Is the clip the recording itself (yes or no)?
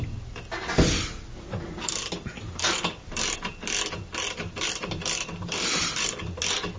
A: yes